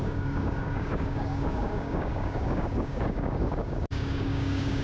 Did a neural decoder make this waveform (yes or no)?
yes